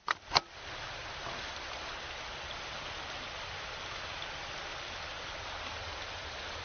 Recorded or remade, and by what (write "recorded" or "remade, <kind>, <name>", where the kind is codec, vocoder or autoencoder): recorded